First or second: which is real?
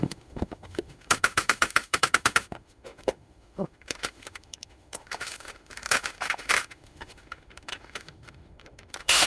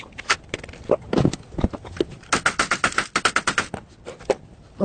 second